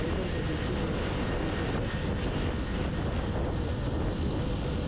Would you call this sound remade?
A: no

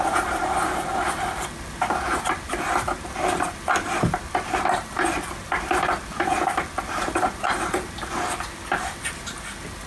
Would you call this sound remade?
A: no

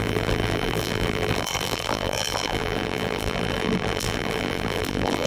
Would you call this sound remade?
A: yes